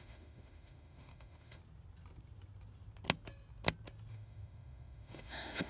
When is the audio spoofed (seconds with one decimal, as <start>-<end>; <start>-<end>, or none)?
0.0-1.6; 4.1-5.7